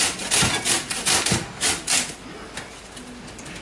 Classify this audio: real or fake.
real